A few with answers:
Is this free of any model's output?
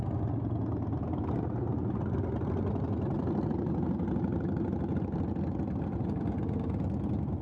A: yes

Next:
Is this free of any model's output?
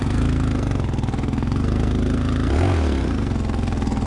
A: no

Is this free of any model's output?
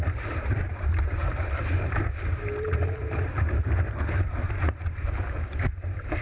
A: no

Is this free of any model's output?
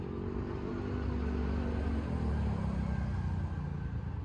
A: yes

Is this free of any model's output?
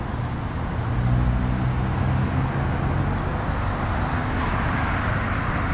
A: yes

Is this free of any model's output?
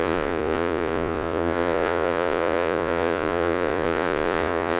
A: no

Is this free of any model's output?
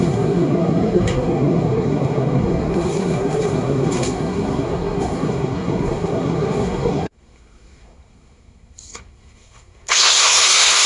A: no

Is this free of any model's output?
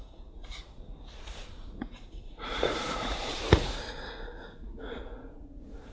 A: no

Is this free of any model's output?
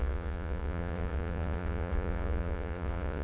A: no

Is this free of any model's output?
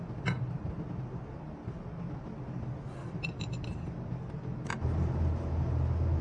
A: yes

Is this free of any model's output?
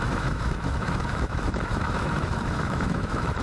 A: no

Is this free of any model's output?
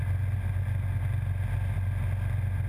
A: yes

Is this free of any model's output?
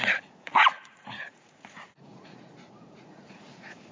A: no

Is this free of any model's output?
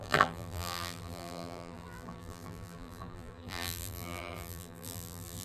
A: no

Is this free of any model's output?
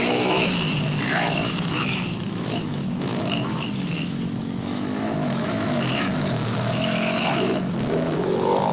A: no